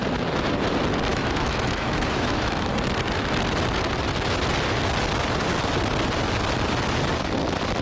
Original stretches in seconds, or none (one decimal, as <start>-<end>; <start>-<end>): 0.0-1.1; 2.7-7.8